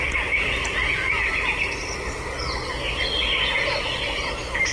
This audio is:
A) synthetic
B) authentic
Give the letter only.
B